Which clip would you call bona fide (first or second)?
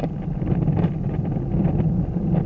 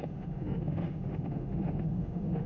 first